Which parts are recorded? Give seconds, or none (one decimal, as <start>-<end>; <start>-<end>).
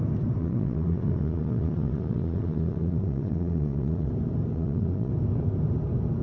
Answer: 0.0-0.4; 4.1-4.5; 5.1-6.2